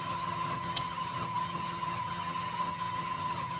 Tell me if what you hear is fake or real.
fake